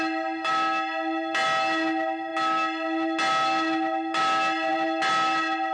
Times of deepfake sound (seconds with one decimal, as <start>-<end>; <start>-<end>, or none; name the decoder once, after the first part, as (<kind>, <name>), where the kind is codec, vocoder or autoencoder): none

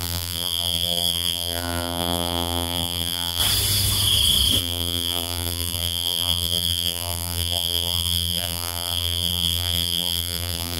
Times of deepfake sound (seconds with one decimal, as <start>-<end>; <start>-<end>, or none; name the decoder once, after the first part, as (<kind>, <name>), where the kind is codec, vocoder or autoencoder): 0.0-3.4 (vocoder, BigVGAN v2); 4.6-10.8

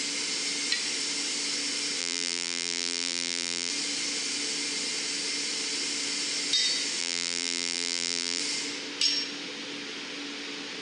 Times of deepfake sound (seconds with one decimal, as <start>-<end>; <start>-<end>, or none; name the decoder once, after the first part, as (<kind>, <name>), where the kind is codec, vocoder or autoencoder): 2.0-3.7 (vocoder, BigVGAN v2); 7.0-8.4

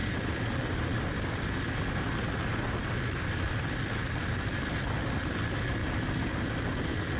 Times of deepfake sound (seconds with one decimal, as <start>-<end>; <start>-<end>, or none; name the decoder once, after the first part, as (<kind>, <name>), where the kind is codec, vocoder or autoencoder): 0.0-1.0 (vocoder, BigVGAN v2); 2.8-3.9

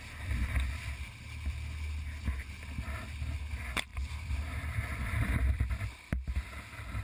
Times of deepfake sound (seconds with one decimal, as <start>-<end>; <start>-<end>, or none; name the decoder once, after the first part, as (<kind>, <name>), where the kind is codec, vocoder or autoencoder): 3.9-5.7 (vocoder, BigVGAN v2)